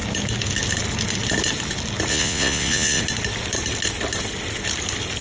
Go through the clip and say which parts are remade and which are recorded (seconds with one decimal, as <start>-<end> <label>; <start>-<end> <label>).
0.0-2.1 recorded; 2.1-3.0 remade; 3.0-5.2 recorded